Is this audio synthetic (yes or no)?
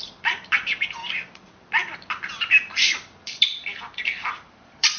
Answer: yes